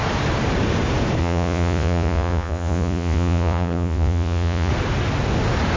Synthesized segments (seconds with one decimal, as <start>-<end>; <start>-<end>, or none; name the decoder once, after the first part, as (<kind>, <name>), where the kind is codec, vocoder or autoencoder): 1.2-4.7 (vocoder, Vocos)